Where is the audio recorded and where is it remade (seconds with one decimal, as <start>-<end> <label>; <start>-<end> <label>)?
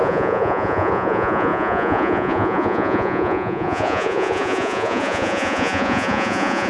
0.0-6.7 remade